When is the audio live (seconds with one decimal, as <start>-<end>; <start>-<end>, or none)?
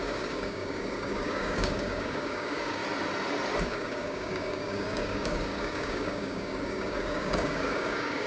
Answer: 2.8-3.6